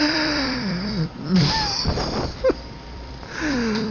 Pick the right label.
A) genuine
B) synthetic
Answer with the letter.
B